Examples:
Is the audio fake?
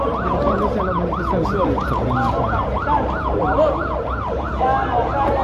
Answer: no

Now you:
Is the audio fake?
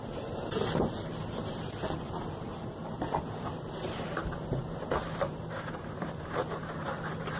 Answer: yes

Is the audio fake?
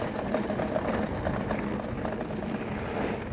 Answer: no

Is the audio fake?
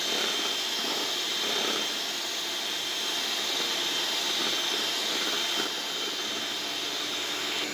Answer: no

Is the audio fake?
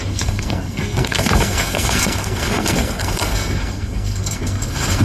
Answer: yes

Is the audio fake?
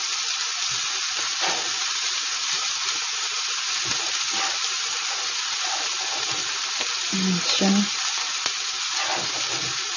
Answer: no